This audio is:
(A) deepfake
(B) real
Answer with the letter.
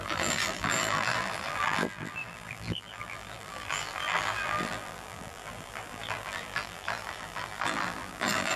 A